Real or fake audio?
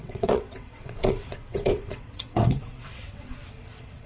fake